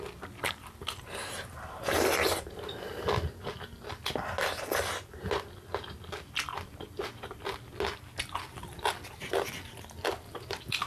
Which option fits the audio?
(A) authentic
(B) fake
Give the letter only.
A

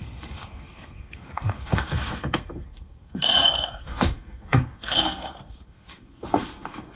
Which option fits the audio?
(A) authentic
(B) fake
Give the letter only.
B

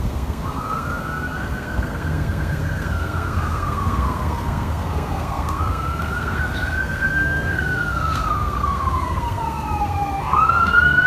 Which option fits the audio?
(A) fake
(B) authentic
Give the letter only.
A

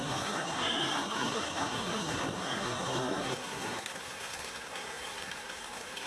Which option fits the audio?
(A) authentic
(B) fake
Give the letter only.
B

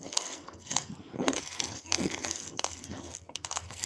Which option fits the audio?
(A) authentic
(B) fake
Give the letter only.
B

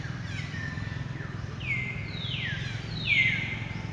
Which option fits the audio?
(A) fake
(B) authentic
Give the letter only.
B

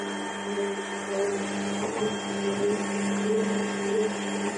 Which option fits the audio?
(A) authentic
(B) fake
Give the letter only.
A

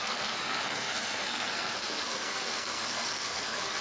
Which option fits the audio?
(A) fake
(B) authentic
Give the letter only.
A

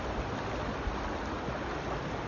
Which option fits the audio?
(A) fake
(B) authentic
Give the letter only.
B